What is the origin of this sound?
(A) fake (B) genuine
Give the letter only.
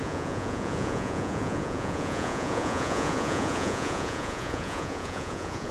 A